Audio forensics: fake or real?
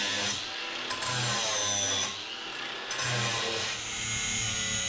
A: real